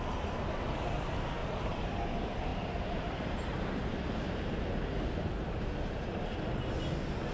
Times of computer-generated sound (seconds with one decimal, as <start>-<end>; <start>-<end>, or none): 1.4-2.0; 2.5-4.8